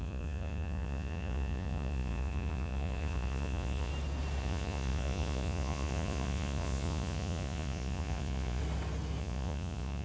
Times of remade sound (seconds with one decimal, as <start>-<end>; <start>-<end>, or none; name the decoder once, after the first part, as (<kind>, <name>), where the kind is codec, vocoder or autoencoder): 0.0-3.9 (vocoder, Vocos); 4.4-8.6; 9.2-10.0